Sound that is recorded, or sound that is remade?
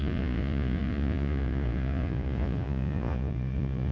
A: remade